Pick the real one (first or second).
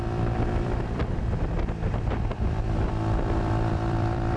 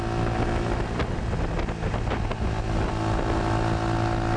second